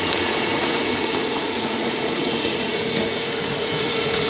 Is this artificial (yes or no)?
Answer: yes